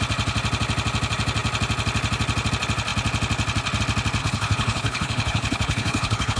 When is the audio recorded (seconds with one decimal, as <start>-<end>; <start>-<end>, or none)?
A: 0.0-4.2